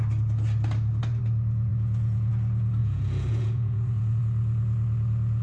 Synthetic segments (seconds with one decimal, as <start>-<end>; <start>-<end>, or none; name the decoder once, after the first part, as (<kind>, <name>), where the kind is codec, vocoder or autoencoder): 1.7-2.3 (vocoder, Vocos); 2.8-4.2